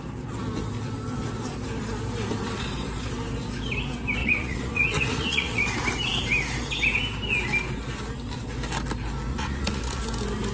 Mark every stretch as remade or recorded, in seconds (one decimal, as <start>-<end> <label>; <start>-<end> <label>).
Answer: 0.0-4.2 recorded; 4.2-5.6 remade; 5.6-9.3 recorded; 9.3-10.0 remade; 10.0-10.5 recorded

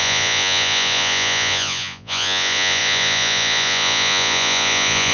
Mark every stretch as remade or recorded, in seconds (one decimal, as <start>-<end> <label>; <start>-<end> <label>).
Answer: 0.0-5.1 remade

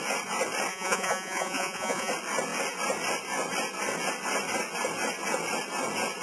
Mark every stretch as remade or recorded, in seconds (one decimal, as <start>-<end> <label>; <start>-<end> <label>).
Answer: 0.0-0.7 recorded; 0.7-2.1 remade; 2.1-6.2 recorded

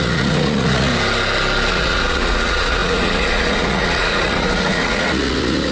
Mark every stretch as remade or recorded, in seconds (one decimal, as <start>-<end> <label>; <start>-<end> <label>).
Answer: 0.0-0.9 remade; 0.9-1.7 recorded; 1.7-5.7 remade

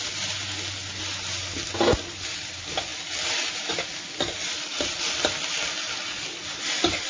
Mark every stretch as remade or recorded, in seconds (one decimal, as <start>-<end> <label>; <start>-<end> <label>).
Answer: 0.0-7.1 recorded

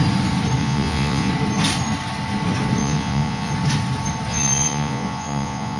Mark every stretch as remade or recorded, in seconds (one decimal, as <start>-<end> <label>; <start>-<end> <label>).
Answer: 0.0-0.6 recorded; 0.6-1.3 remade; 1.3-2.8 recorded; 2.8-3.5 remade; 3.5-4.3 recorded; 4.3-5.8 remade

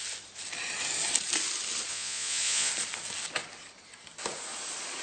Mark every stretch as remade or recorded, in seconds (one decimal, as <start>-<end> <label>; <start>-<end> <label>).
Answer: 0.0-1.9 recorded; 1.9-2.7 remade; 2.7-5.0 recorded